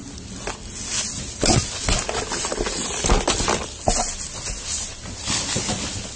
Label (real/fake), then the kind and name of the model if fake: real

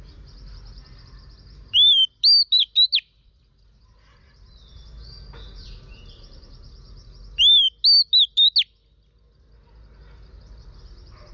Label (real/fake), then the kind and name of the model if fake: real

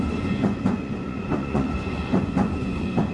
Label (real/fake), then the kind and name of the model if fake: fake, vocoder, Vocos